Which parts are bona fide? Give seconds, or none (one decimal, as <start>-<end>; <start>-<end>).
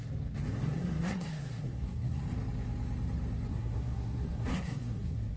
0.0-0.6; 2.2-3.5